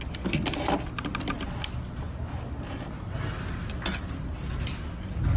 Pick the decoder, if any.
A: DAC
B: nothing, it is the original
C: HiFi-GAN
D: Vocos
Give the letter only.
B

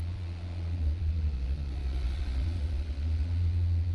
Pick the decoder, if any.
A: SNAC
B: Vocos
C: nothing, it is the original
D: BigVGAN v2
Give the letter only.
B